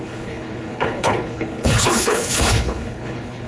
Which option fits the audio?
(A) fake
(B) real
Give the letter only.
A